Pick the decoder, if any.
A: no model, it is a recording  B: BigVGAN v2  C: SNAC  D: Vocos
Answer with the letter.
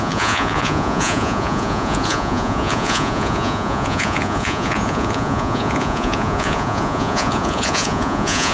D